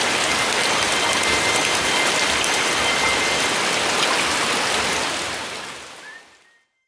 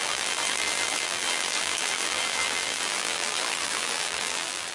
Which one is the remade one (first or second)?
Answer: second